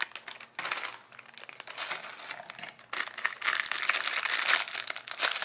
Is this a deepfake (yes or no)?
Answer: no